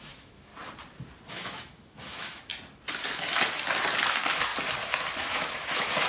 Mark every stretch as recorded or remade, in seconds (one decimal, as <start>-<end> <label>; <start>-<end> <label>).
0.0-0.5 remade; 0.5-1.3 recorded; 1.3-2.5 remade; 2.5-4.1 recorded; 4.1-4.5 remade; 4.5-5.2 recorded; 5.2-6.1 remade